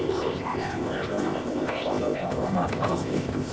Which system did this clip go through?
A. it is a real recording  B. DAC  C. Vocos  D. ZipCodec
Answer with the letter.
D